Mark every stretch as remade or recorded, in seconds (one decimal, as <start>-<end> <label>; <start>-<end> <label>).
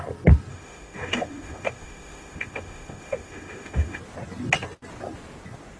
0.0-0.5 recorded; 0.5-4.0 remade; 4.0-5.8 recorded